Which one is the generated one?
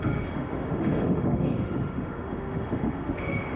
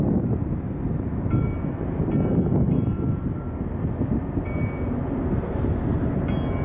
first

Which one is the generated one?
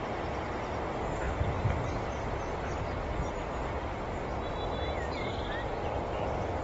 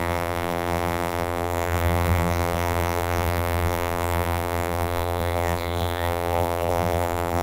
second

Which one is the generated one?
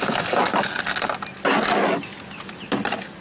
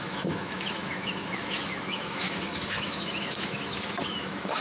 second